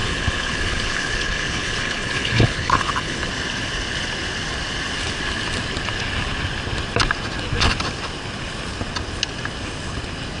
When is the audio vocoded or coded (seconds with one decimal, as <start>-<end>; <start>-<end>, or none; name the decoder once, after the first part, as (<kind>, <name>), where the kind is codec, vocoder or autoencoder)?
0.0-3.3 (codec, HILCodec)